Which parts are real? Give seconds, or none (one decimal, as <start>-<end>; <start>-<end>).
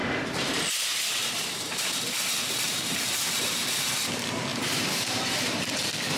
3.7-4.5; 5.8-6.2